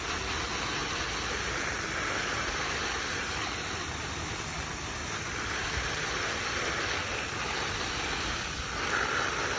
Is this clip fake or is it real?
real